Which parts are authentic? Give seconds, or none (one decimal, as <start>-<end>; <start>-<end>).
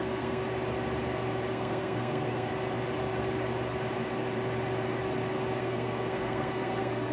0.4-1.5; 2.5-5.6